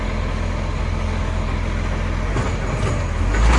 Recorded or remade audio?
recorded